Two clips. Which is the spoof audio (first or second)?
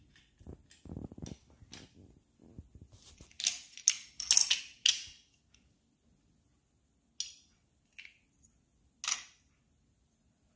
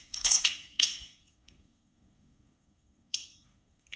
second